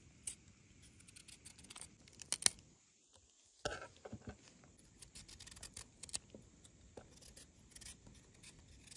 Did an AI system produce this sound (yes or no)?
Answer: no